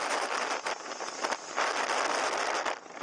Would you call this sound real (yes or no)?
yes